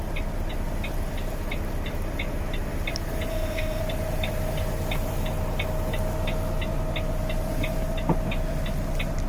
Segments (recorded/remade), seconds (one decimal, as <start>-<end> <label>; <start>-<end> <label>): 0.0-3.3 recorded; 3.3-3.8 remade; 3.8-9.3 recorded